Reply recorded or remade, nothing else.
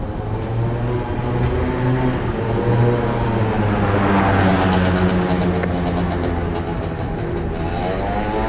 recorded